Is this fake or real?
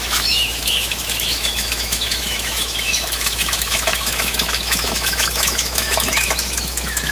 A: fake